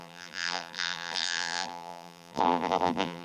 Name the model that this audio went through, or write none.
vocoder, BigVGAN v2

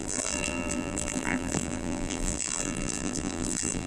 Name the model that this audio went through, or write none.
vocoder, BigVGAN v2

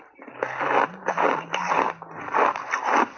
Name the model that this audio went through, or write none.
vocoder, BigVGAN v2